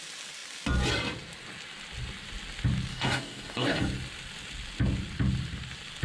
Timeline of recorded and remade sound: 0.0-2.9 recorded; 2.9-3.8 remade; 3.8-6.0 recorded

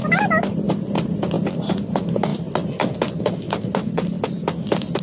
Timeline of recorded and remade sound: 0.0-5.0 recorded

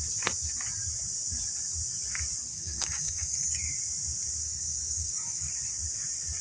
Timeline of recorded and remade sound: 0.0-2.5 recorded; 2.5-3.6 remade; 3.6-4.4 recorded; 4.4-5.5 remade; 5.5-6.4 recorded